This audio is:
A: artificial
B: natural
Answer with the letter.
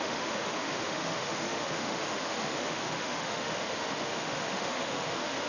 A